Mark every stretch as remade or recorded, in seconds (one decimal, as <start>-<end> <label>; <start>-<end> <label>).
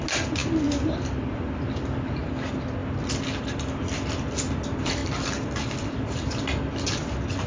0.0-0.4 recorded; 0.4-2.3 remade; 2.3-5.0 recorded; 5.0-6.3 remade; 6.3-7.5 recorded